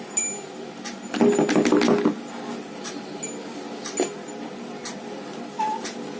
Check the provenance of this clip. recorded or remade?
recorded